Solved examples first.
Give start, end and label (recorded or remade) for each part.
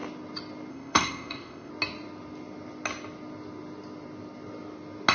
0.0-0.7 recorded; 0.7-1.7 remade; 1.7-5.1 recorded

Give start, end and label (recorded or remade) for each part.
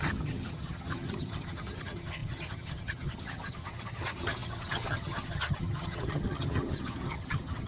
0.0-7.7 remade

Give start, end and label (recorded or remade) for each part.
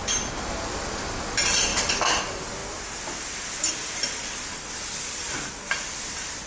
0.0-6.5 recorded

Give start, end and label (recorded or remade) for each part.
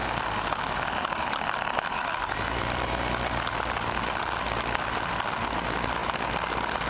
0.0-6.9 recorded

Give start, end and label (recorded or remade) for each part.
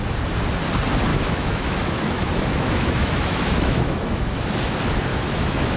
0.0-1.1 recorded; 1.1-4.6 remade; 4.6-5.1 recorded; 5.1-5.8 remade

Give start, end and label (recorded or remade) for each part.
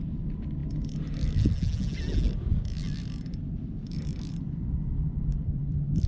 0.0-0.6 remade; 0.6-4.3 recorded; 4.3-6.1 remade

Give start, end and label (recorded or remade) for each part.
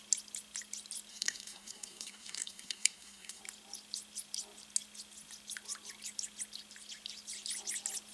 0.0-1.1 recorded; 1.1-3.4 remade; 3.4-8.1 recorded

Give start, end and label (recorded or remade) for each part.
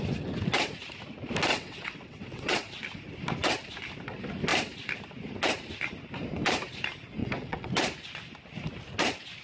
0.0-1.5 recorded; 1.5-2.7 remade; 2.7-7.2 recorded; 7.2-7.7 remade; 7.7-9.4 recorded